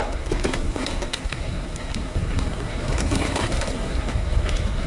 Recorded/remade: remade